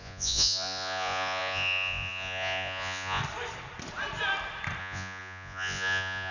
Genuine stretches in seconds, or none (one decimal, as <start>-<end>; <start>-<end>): 3.2-4.8